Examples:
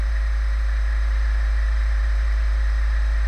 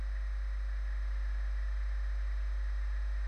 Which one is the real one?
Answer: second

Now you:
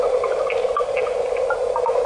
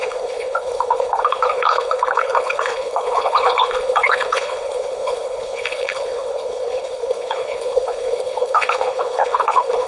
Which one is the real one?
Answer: first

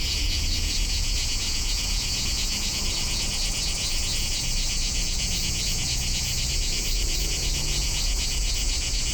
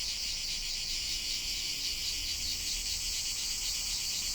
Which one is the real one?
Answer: second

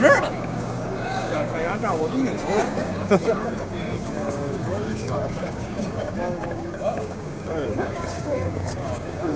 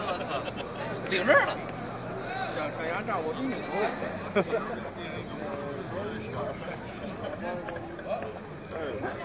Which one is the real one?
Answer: second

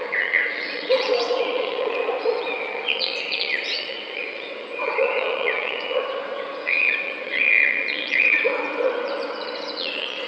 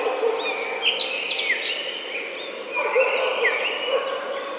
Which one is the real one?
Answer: second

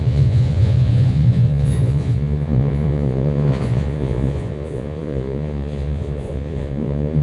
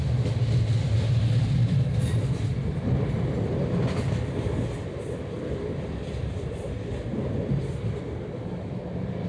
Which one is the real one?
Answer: second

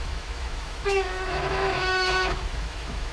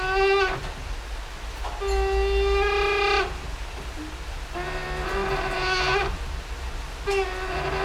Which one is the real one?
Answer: second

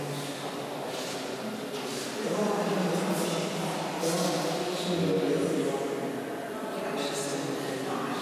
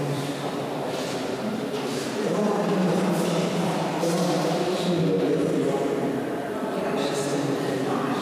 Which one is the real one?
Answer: first